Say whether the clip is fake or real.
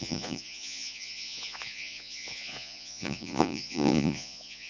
fake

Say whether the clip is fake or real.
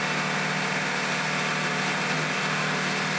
real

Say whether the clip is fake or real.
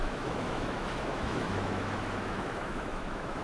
fake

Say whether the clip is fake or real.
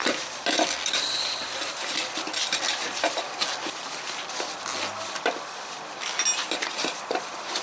real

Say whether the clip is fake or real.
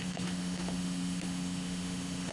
fake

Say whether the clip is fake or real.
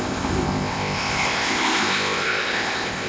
fake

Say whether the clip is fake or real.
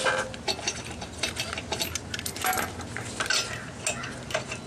real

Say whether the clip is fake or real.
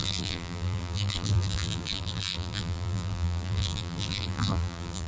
fake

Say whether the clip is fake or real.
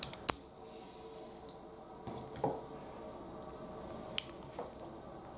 real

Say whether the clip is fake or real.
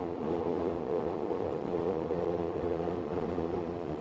fake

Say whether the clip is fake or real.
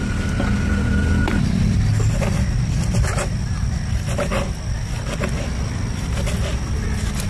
real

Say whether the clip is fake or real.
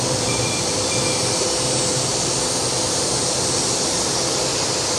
real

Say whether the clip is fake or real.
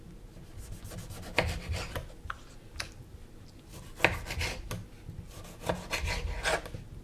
real